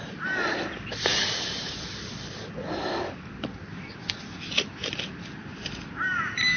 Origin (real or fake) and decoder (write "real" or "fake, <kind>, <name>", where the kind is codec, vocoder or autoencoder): real